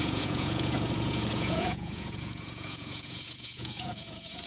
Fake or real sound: fake